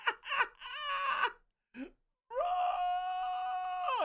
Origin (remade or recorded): recorded